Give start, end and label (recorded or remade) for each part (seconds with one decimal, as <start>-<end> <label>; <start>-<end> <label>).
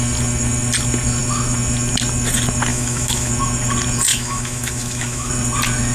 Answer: 0.0-2.7 recorded; 2.7-3.3 remade; 3.3-4.1 recorded; 4.1-5.3 remade; 5.3-5.9 recorded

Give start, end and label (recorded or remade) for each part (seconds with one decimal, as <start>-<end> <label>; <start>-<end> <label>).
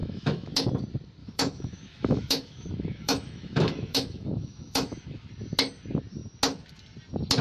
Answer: 0.0-0.7 remade; 0.7-1.2 recorded; 1.2-5.3 remade; 5.3-7.4 recorded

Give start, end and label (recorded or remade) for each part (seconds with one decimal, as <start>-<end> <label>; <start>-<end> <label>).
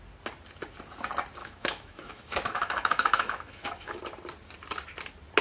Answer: 0.0-1.4 recorded; 1.4-4.0 remade; 4.0-5.4 recorded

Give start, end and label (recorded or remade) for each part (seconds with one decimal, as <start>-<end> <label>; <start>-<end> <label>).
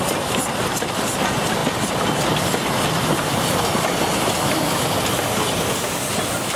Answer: 0.0-6.6 recorded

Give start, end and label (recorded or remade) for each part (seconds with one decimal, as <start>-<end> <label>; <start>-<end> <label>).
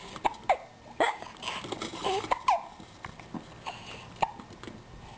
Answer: 0.0-5.2 recorded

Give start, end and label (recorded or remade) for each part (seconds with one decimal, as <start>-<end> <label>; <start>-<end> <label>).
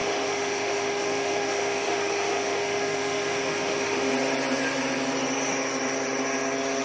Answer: 0.0-4.1 remade; 4.1-6.8 recorded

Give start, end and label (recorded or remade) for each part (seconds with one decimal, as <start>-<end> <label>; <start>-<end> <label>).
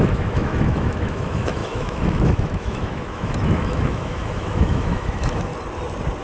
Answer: 0.0-5.5 remade; 5.5-6.2 recorded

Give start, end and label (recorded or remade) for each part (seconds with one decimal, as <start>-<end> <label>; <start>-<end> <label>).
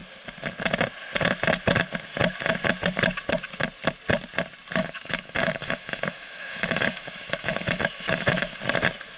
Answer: 0.0-4.8 recorded; 4.8-8.6 remade; 8.6-9.2 recorded